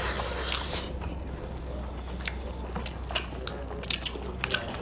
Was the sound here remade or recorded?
recorded